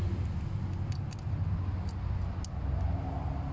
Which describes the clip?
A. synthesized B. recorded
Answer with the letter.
B